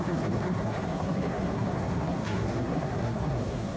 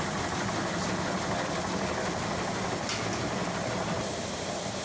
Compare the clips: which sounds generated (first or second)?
first